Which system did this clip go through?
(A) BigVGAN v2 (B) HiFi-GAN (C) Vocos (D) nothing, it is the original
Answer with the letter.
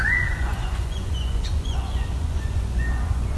C